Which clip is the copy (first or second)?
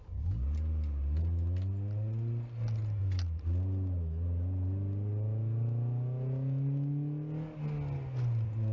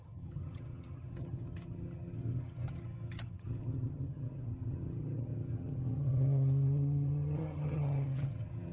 second